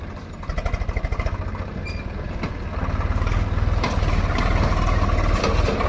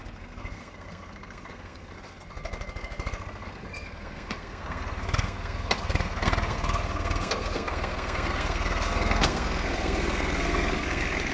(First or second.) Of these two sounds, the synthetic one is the second